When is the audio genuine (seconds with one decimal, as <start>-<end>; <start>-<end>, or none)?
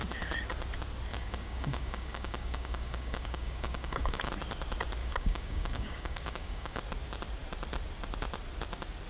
0.0-1.1; 4.3-5.0; 6.8-9.1